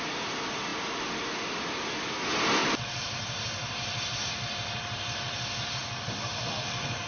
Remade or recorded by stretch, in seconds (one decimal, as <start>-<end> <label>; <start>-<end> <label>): 0.0-2.6 recorded; 2.6-4.3 remade; 4.3-7.1 recorded